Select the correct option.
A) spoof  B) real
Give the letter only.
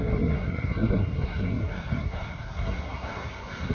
A